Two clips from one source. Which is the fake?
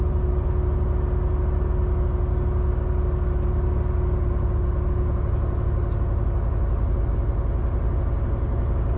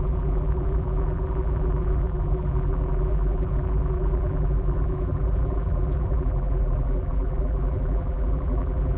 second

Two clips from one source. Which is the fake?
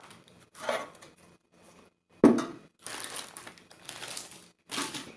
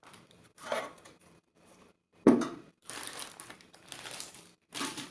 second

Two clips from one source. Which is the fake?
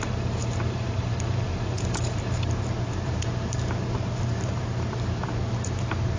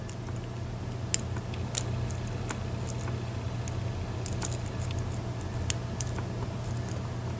first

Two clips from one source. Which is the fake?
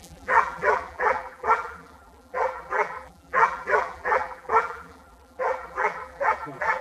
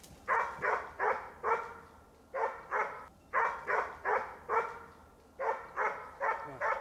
first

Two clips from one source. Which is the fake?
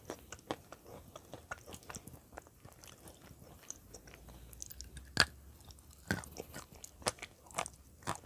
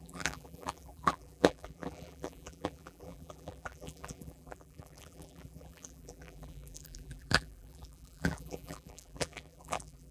second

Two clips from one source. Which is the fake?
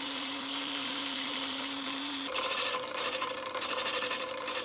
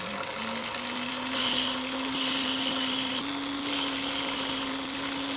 first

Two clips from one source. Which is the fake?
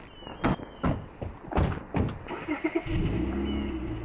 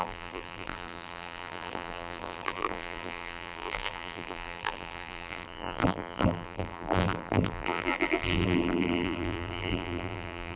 second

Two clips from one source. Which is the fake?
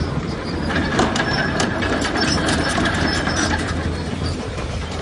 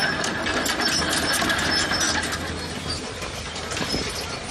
first